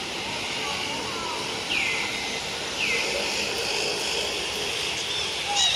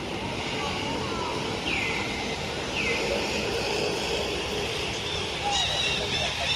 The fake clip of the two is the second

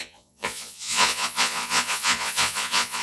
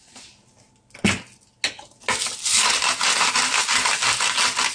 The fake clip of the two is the first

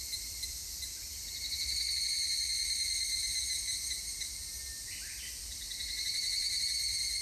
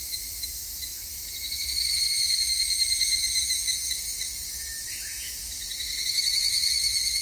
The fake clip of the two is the second